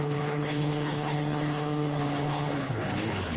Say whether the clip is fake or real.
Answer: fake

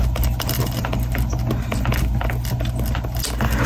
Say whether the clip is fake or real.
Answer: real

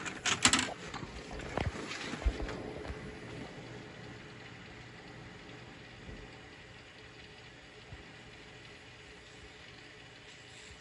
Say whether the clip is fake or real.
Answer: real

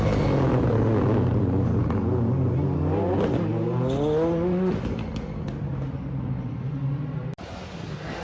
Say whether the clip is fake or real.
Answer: real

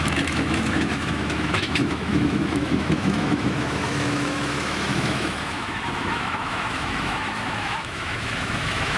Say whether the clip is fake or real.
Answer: fake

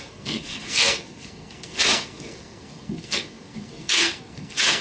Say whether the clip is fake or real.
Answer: fake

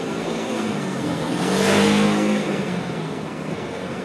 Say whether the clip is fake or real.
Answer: fake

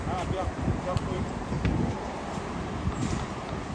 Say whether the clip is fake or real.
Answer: fake